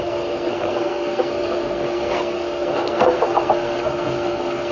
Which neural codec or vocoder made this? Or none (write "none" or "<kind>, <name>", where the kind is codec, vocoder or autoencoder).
codec, SNAC